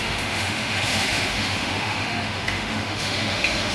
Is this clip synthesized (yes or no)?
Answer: yes